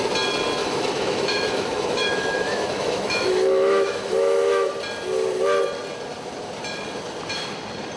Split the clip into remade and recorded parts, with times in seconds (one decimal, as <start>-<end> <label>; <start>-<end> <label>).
0.0-0.6 recorded; 0.6-4.7 remade; 4.7-8.0 recorded

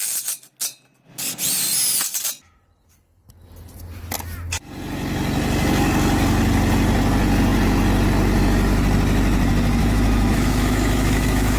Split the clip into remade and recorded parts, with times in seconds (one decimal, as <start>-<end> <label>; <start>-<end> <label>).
0.0-9.8 recorded; 9.8-11.6 remade

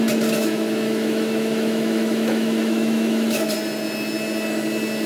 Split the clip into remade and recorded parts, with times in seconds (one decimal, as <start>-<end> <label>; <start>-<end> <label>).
0.0-0.4 recorded; 0.4-3.5 remade; 3.5-5.1 recorded

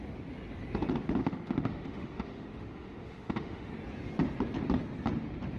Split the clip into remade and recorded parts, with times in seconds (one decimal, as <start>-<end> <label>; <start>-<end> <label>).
0.0-1.2 recorded; 1.2-3.7 remade; 3.7-5.6 recorded

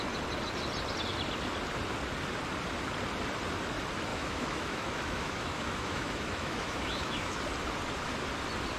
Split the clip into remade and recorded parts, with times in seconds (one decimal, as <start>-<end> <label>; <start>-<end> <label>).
0.0-4.1 recorded; 4.1-7.4 remade; 7.4-8.8 recorded

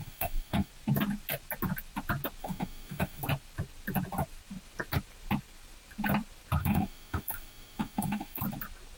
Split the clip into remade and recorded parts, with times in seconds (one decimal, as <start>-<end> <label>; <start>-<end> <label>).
0.0-0.7 remade; 0.7-2.4 recorded; 2.4-3.2 remade; 3.2-6.6 recorded; 6.6-8.4 remade; 8.4-9.0 recorded

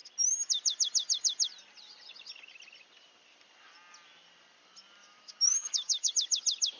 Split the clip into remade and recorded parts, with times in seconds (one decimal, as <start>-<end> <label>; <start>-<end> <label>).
0.0-5.0 recorded; 5.0-6.1 remade; 6.1-6.8 recorded

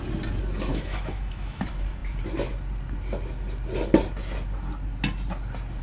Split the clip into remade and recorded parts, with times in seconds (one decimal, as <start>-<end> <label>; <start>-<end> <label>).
0.0-0.7 recorded; 0.7-1.6 remade; 1.6-5.8 recorded